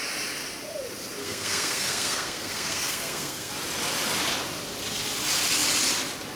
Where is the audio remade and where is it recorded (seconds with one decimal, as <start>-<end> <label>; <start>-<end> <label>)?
0.0-1.2 recorded; 1.2-3.5 remade; 3.5-6.4 recorded